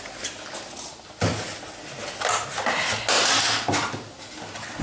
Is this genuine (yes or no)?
yes